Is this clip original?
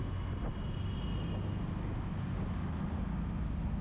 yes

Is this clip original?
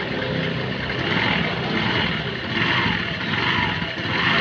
yes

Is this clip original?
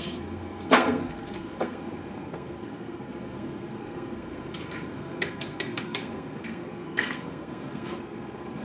no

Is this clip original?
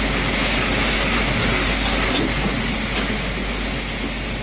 yes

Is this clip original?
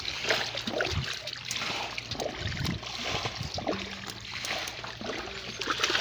yes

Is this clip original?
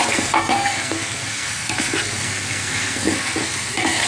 no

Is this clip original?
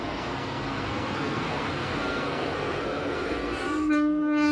no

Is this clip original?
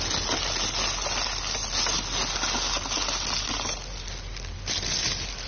yes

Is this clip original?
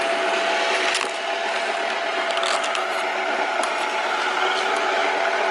yes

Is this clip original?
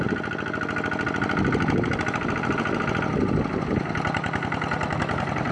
yes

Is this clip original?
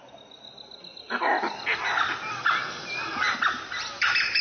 yes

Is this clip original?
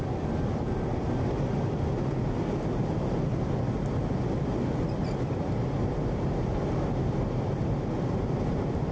yes